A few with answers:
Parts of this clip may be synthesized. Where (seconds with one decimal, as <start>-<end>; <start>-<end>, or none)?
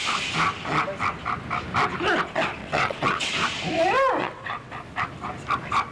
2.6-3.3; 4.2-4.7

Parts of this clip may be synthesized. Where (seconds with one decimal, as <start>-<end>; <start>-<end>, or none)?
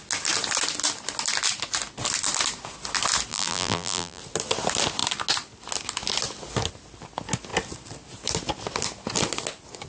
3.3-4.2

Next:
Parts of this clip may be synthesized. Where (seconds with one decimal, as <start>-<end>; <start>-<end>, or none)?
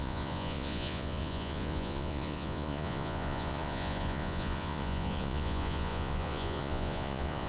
0.0-7.5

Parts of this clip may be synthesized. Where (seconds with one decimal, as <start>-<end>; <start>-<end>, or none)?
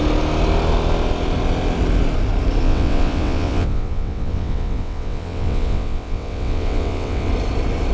2.6-7.3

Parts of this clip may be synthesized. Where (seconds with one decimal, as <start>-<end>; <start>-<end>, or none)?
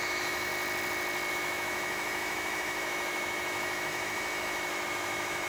0.0-0.5; 1.3-5.5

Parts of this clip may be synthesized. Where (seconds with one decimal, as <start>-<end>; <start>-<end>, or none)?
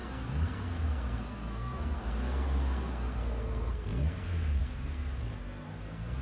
0.0-6.2